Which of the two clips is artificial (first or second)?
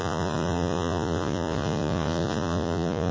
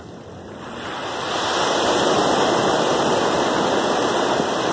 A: first